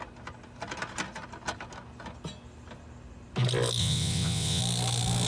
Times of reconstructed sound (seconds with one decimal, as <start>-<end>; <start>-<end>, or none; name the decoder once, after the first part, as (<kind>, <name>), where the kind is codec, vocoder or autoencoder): 3.8-4.6 (vocoder, WaveNeXt)